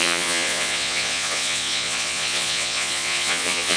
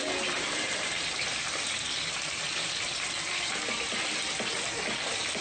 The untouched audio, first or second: second